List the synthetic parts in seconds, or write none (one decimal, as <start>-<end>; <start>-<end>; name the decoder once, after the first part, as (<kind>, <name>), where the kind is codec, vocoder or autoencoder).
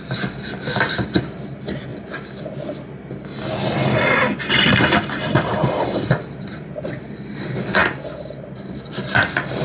none